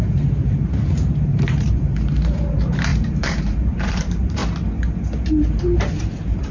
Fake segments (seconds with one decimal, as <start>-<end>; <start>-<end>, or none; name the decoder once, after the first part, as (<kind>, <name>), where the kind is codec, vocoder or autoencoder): 0.0-4.4 (vocoder, BigVGAN v2); 5.3-6.5